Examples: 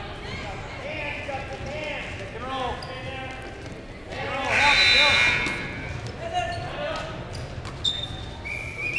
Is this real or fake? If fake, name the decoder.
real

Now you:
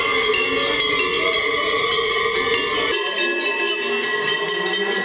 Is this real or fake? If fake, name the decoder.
real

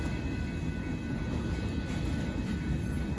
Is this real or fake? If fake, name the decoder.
real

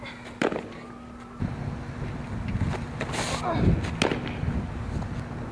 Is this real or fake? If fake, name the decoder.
real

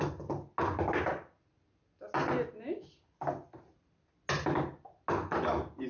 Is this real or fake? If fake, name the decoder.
real